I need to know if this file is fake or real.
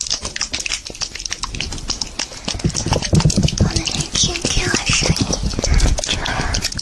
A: real